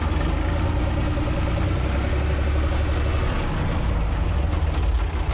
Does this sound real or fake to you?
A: real